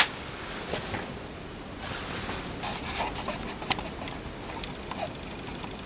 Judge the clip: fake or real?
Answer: real